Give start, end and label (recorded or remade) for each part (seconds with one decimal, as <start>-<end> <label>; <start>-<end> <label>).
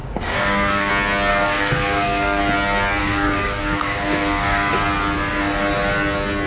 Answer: 0.0-0.9 remade; 0.9-1.3 recorded; 1.3-2.4 remade; 2.4-3.0 recorded; 3.0-4.7 remade; 4.7-6.5 recorded